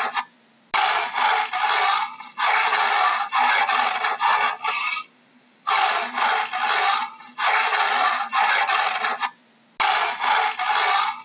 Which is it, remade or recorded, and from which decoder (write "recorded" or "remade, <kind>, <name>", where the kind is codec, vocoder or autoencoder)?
recorded